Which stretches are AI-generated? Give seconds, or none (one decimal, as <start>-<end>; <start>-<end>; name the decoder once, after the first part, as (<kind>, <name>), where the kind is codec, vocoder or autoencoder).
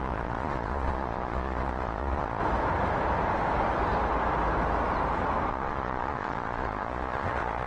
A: 0.0-2.4 (vocoder, Vocos); 5.5-7.7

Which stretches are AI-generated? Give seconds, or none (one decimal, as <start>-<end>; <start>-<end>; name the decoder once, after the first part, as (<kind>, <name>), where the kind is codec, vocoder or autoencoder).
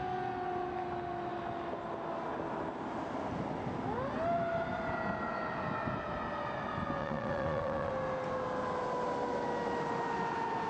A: 7.0-7.9 (vocoder, Vocos)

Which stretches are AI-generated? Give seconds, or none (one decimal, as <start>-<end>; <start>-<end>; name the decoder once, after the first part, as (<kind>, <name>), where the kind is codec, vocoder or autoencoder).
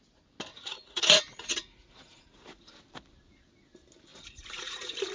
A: 0.5-2.7 (vocoder, Vocos); 4.1-5.1